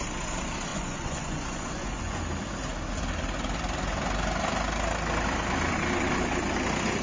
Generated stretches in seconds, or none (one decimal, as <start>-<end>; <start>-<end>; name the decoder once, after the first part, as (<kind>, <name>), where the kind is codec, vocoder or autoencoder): 0.7-2.2 (vocoder, Vocos)

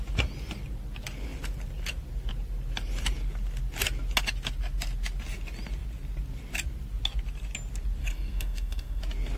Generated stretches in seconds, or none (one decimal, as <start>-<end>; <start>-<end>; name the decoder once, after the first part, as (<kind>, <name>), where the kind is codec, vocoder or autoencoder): 8.0-9.0 (codec, SNAC)